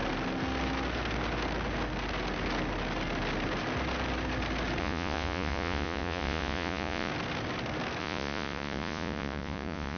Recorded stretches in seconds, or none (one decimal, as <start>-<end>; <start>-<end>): 0.0-4.8; 7.1-8.0